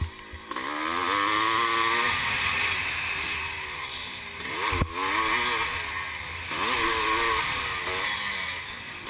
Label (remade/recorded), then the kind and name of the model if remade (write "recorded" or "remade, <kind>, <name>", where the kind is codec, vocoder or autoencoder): recorded